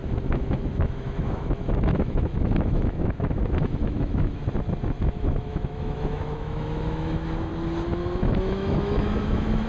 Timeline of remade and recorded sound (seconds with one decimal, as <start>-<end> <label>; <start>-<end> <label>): 0.0-4.4 remade; 4.4-5.0 recorded; 5.0-7.5 remade; 7.5-8.2 recorded; 8.2-9.7 remade

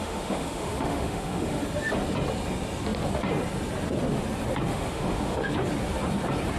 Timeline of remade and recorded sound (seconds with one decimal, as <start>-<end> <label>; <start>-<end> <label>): 0.0-1.6 remade; 1.6-4.7 recorded; 4.7-5.5 remade; 5.5-6.6 recorded

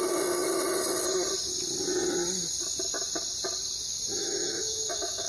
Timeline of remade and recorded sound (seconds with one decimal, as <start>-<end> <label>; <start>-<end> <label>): 0.0-4.2 recorded; 4.2-5.3 remade

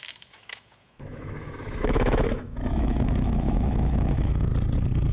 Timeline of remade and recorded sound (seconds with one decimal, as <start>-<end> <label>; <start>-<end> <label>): 0.0-4.5 remade; 4.5-5.1 recorded

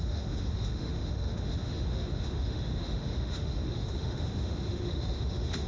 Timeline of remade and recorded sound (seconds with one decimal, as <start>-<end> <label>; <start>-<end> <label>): 0.0-5.7 remade

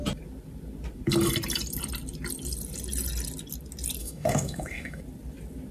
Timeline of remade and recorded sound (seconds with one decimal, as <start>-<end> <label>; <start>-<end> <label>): 0.0-4.0 recorded; 4.0-5.0 remade; 5.0-5.7 recorded

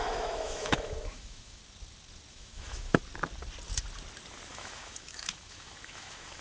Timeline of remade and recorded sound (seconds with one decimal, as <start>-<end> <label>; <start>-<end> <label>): 0.0-1.6 remade; 1.6-2.3 recorded; 2.3-3.0 remade; 3.0-4.5 recorded; 4.5-6.4 remade

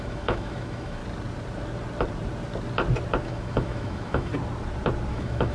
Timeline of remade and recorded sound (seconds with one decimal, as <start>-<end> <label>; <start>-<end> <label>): 0.0-1.0 remade; 1.0-3.2 recorded; 3.2-4.3 remade; 4.3-5.1 recorded; 5.1-5.5 remade